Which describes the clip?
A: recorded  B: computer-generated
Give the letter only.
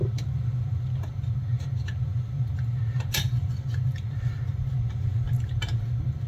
A